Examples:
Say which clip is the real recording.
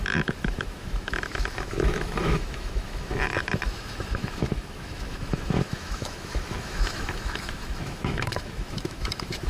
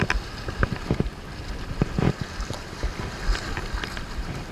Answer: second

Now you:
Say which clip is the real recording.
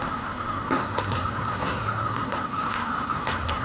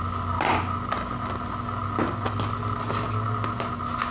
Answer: second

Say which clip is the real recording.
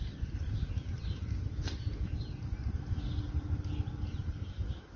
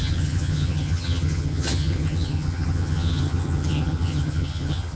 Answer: first